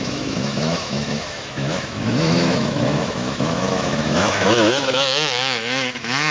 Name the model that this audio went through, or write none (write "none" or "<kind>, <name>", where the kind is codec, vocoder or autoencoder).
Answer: autoencoder, DAC-VAE